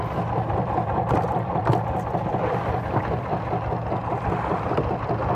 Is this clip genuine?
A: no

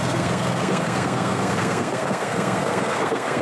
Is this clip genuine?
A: no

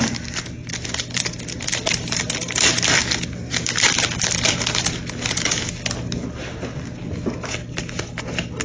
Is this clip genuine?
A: yes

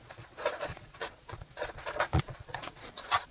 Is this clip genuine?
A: no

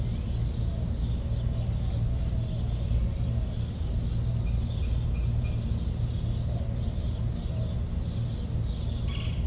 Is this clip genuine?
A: yes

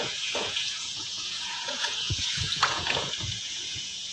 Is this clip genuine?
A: no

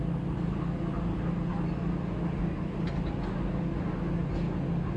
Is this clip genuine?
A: yes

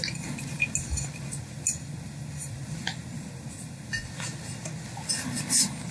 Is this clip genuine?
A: yes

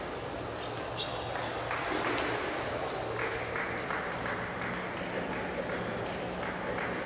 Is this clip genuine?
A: yes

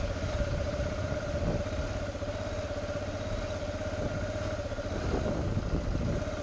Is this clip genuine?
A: yes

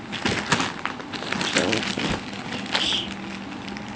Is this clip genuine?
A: yes